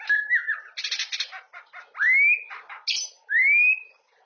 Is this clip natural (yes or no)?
yes